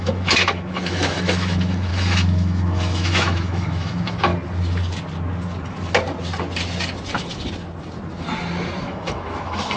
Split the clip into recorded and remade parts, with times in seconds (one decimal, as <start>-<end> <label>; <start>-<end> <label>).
0.0-4.3 remade; 4.3-8.8 recorded; 8.8-9.8 remade